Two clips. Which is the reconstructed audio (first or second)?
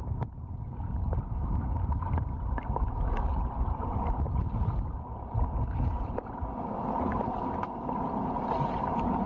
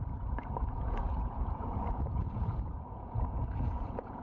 second